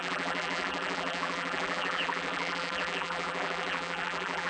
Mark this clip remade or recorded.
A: remade